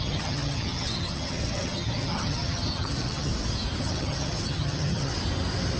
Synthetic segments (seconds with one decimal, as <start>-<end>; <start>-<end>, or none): 0.0-3.3; 3.8-5.1